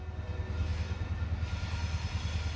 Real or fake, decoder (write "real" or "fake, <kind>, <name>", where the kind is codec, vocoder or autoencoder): real